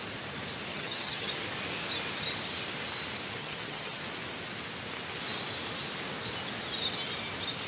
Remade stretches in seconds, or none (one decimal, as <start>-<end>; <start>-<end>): 0.7-1.3; 3.4-4.0